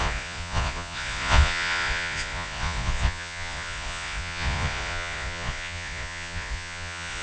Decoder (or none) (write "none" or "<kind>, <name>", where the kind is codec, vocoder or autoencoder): vocoder, Vocos